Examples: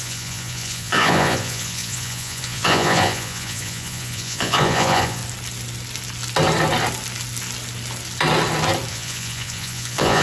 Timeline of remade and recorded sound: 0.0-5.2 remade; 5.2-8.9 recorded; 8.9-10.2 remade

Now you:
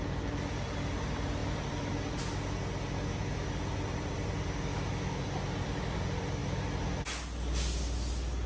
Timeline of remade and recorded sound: 0.0-4.7 recorded; 4.7-5.2 remade; 5.2-8.5 recorded

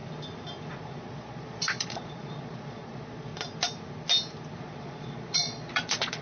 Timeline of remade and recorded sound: 0.0-0.7 recorded; 0.7-3.3 remade; 3.3-4.6 recorded; 4.6-6.2 remade

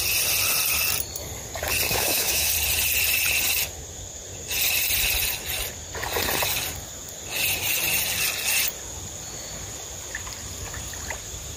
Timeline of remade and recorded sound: 0.0-1.9 recorded; 1.9-2.5 remade; 2.5-11.6 recorded